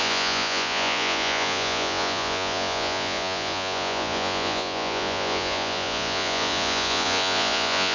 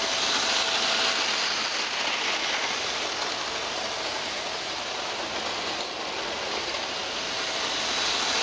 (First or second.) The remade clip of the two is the first